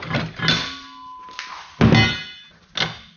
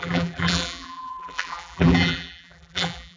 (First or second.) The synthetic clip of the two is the second